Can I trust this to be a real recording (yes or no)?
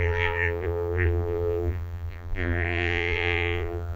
no